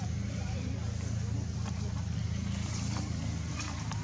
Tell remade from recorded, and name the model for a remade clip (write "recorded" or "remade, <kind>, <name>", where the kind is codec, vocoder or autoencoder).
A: recorded